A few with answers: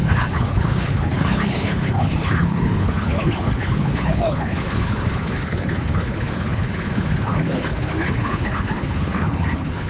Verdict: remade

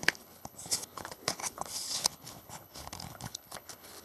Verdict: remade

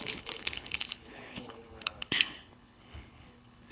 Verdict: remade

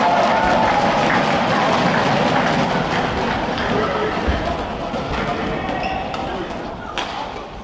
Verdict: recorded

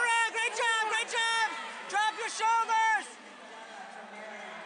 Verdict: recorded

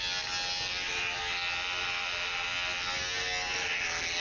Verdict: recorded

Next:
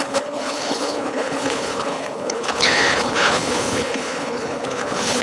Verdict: remade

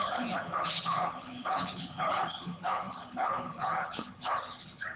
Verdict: remade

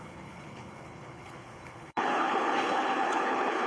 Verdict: remade